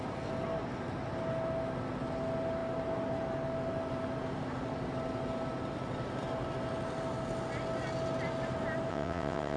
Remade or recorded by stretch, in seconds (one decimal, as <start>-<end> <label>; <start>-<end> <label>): 0.0-8.9 recorded; 8.9-9.6 remade